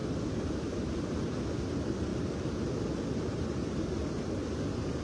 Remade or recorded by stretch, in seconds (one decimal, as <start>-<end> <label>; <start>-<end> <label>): 0.0-5.0 recorded